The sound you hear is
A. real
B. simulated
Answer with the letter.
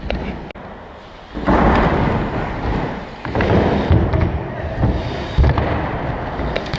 A